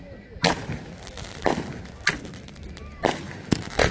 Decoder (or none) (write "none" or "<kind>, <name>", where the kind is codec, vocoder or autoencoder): none